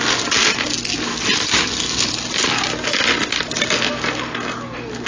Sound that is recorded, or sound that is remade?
recorded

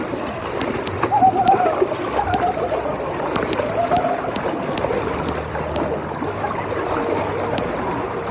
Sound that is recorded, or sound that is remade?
recorded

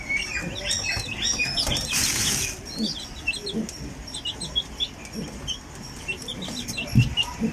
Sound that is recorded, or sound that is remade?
recorded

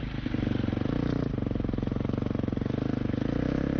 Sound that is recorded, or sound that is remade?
recorded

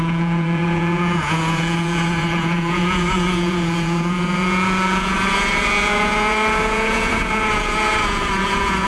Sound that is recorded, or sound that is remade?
remade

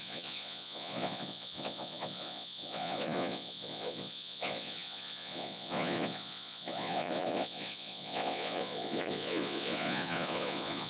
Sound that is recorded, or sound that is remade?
remade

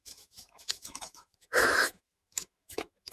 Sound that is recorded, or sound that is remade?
remade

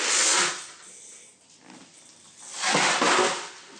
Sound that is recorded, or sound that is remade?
recorded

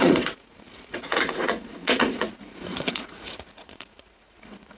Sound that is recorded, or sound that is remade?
remade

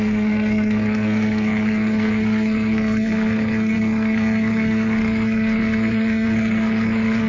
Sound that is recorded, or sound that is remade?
remade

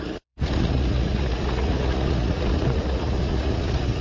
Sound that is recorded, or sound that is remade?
remade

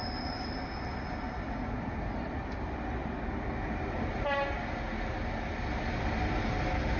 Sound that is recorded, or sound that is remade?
recorded